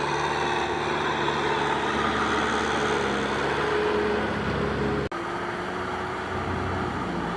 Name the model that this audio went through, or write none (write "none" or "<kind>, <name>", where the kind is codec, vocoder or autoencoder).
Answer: none